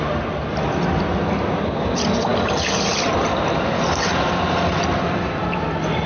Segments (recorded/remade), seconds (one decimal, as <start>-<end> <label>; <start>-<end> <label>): 0.0-6.1 recorded